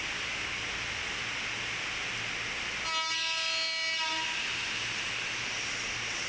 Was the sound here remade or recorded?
recorded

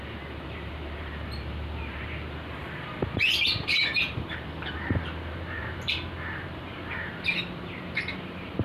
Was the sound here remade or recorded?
remade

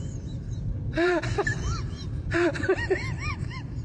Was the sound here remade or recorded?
remade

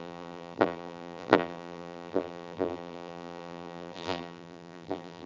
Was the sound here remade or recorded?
remade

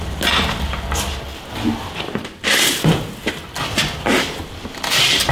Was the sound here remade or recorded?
recorded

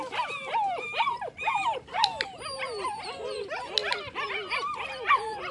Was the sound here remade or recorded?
remade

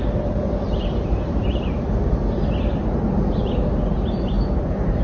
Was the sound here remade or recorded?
remade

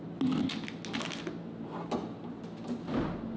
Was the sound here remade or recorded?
recorded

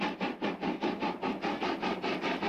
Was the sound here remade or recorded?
recorded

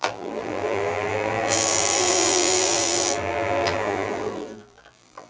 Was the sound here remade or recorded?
remade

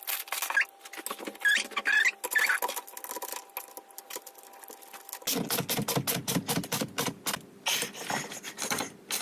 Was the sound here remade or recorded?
recorded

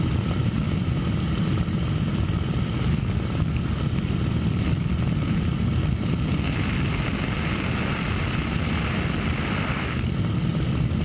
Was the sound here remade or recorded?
recorded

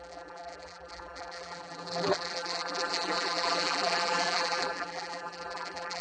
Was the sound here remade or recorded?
remade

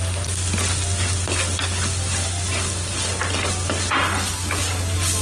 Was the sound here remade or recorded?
recorded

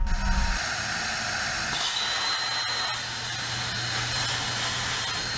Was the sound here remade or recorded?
recorded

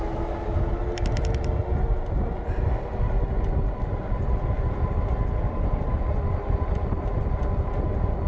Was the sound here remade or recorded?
recorded